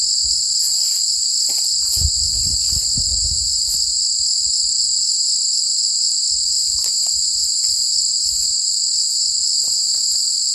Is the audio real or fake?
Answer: real